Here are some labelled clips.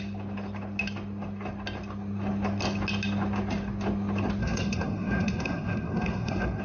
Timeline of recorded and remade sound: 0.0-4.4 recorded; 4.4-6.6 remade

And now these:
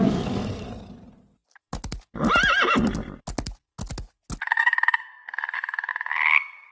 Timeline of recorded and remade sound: 0.0-0.7 remade; 0.7-4.4 recorded; 4.4-6.7 remade

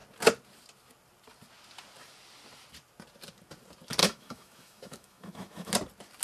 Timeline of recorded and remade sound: 0.0-4.0 recorded; 4.0-5.7 remade; 5.7-6.2 recorded